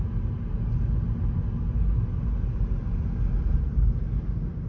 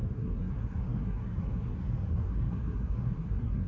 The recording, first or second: first